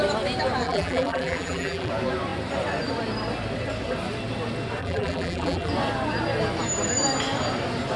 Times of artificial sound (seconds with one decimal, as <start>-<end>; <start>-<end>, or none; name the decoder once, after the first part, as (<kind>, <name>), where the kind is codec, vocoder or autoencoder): 0.6-1.9 (vocoder, BigVGAN v2); 4.8-5.7